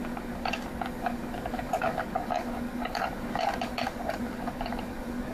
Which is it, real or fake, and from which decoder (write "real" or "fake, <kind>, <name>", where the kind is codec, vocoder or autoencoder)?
fake, codec, DAC